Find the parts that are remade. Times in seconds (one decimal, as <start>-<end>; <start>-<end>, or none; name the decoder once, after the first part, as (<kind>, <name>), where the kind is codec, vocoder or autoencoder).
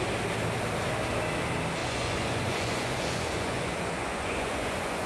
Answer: 1.8-5.1 (vocoder, Vocos)